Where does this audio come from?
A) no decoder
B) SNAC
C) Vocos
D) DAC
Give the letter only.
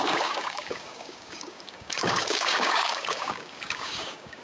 D